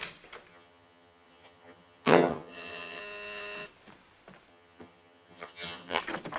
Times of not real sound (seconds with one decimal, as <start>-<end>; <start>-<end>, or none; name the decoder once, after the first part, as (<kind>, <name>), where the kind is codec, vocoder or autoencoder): 0.5-3.0 (vocoder, HiFi-GAN); 4.5-6.0